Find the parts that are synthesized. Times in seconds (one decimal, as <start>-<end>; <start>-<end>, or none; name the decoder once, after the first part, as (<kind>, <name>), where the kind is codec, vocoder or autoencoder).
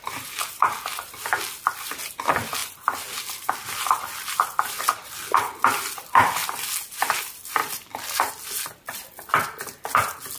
2.6-4.8 (vocoder, BigVGAN v2); 7.6-8.3